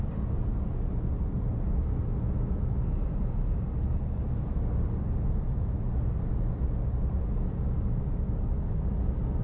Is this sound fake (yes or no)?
no